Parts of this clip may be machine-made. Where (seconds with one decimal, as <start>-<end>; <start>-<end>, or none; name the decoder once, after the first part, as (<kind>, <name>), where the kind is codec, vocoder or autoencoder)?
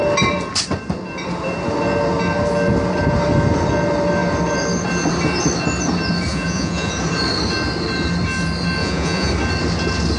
6.3-6.9 (vocoder, Vocos); 8.8-9.3